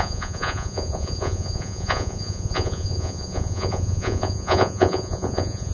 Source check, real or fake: fake